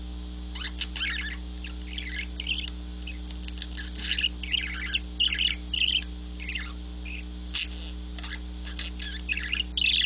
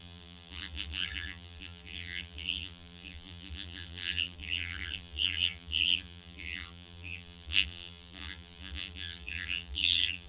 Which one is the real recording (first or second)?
first